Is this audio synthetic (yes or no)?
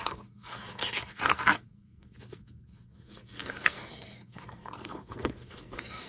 yes